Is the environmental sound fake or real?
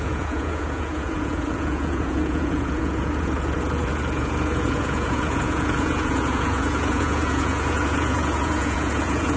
fake